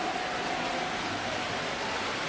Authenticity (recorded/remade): recorded